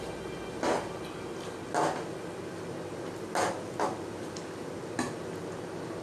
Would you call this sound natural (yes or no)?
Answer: yes